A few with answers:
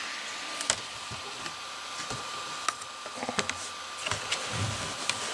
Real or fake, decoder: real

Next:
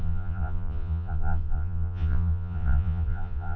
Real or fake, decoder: fake, vocoder, Vocos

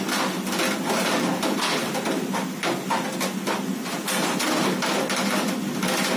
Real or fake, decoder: real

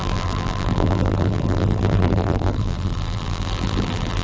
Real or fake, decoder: fake, vocoder, BigVGAN v2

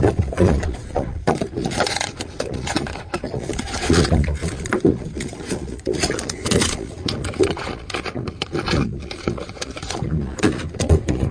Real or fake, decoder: fake, vocoder, Vocos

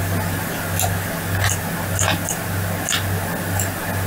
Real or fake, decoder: real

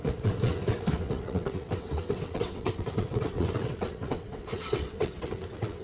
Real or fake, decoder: fake, vocoder, WaveNeXt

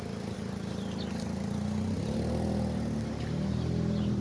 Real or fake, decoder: real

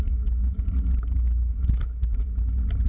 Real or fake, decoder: real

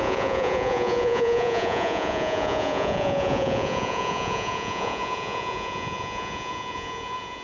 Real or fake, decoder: fake, vocoder, Vocos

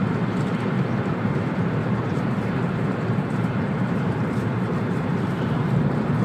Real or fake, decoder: fake, vocoder, BigVGAN v2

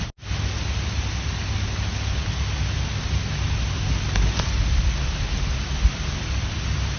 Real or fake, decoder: real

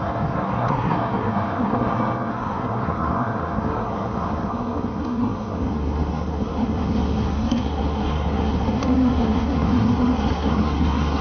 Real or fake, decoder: fake, codec, SNAC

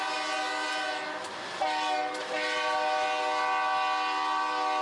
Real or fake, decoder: real